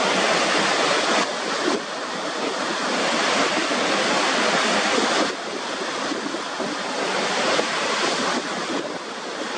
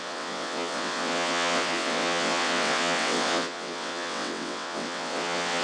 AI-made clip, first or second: second